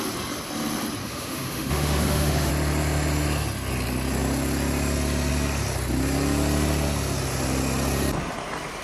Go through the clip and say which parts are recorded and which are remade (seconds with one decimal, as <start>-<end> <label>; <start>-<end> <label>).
0.0-1.0 recorded; 1.0-2.5 remade; 2.5-8.8 recorded